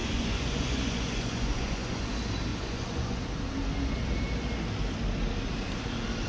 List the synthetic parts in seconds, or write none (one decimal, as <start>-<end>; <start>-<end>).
0.0-2.1; 2.5-3.2